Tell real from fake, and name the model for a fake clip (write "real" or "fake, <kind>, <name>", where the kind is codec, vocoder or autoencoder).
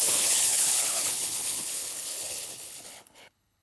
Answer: fake, codec, HILCodec